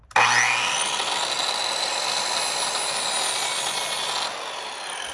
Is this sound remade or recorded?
recorded